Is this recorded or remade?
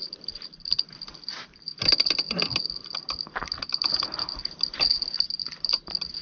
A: remade